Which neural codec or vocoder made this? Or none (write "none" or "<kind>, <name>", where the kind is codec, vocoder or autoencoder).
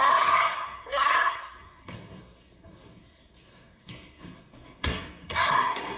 codec, SNAC